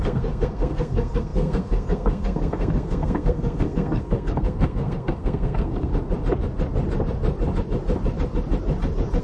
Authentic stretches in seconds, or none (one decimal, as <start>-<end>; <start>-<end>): 5.9-9.2